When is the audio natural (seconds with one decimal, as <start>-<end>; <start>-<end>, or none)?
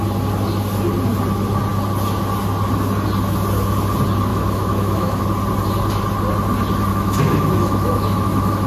0.0-4.3; 5.2-6.9